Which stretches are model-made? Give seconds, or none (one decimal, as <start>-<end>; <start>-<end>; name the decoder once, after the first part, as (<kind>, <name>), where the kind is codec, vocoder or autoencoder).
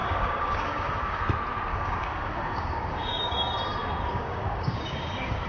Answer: 0.0-1.2 (codec, DAC); 1.7-3.5; 4.1-5.5